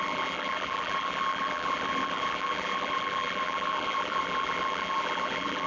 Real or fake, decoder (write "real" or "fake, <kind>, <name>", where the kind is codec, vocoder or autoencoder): fake, vocoder, BigVGAN v2